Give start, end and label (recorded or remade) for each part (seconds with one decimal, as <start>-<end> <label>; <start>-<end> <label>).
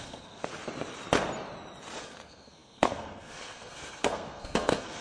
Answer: 0.0-0.5 remade; 0.5-2.0 recorded; 2.0-5.0 remade